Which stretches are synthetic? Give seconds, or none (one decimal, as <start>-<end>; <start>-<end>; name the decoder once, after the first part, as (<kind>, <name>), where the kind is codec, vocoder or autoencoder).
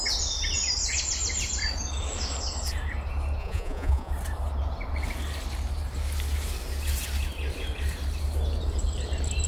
3.4-4.1 (vocoder, Vocos)